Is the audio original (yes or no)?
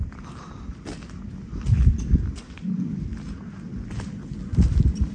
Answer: yes